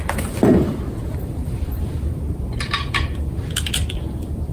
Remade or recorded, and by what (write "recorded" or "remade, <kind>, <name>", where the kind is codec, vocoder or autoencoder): remade, vocoder, BigVGAN v2